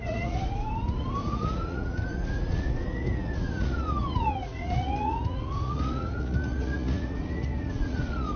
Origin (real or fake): fake